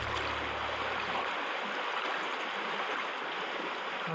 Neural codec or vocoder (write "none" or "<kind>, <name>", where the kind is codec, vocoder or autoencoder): none